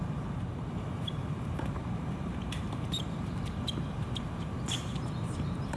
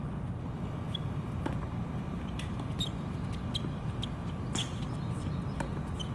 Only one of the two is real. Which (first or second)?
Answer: second